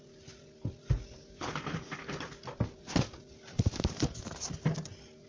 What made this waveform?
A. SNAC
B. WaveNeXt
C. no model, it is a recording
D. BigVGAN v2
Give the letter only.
C